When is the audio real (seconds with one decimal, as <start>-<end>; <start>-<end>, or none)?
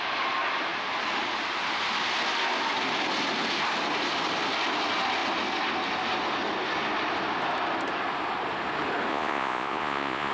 0.0-9.1